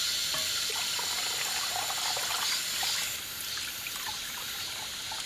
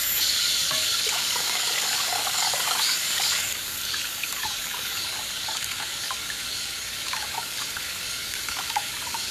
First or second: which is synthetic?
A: second